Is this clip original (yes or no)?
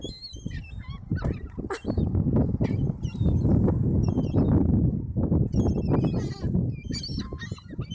yes